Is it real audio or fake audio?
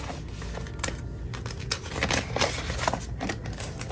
real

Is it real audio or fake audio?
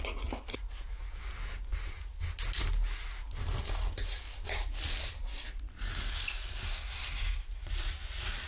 real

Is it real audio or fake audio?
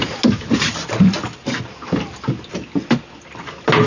real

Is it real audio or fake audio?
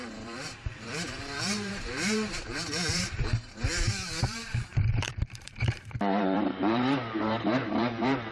fake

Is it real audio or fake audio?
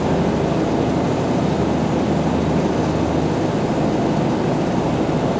real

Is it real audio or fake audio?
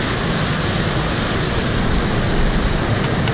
real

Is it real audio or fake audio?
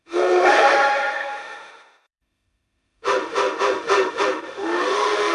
fake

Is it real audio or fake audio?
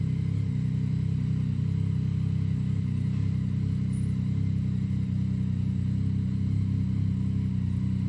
real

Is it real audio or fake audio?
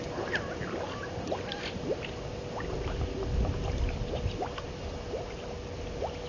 real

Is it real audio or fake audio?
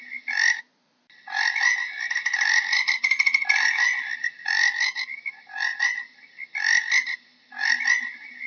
real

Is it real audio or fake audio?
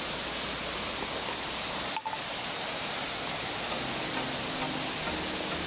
real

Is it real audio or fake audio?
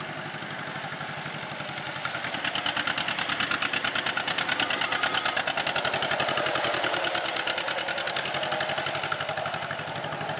real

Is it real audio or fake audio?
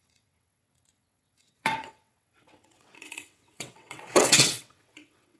fake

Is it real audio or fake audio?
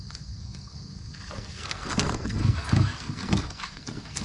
fake